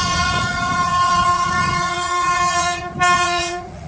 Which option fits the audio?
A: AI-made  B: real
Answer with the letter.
A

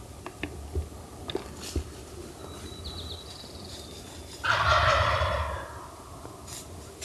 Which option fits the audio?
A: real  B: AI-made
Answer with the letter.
A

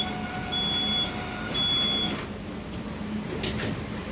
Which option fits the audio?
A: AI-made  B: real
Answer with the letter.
B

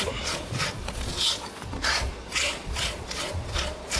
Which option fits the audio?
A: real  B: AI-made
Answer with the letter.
B